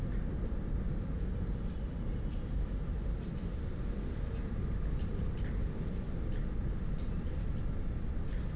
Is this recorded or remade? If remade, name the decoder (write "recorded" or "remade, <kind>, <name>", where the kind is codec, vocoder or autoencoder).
recorded